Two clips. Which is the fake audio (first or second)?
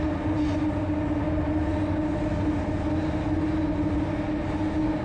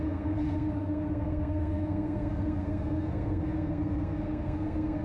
second